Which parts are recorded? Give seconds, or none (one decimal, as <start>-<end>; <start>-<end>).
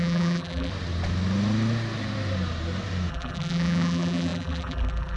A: 0.7-3.1